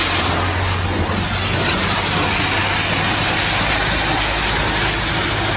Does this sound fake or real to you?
real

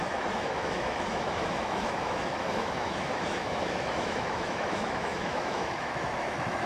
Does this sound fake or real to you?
fake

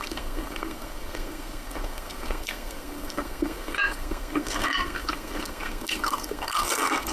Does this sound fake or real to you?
fake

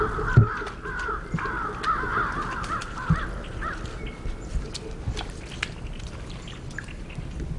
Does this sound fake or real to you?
real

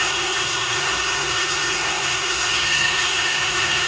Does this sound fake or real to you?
fake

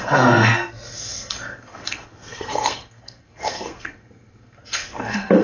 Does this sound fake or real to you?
fake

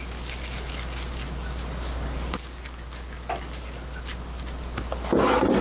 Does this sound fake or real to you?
real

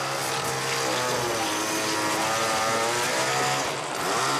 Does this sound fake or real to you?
real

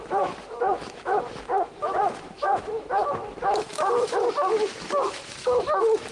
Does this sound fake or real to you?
fake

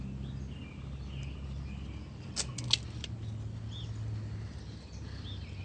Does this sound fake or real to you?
real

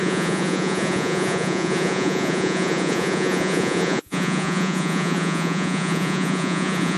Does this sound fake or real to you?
fake